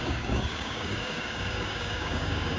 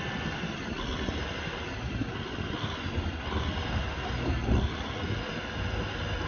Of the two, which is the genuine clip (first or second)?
second